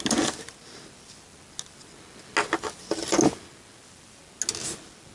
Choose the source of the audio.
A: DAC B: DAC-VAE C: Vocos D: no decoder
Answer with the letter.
D